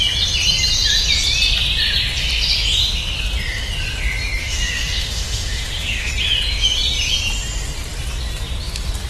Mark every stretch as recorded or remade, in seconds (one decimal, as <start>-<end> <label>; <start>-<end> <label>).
0.0-4.4 recorded; 4.4-6.1 remade; 6.1-9.1 recorded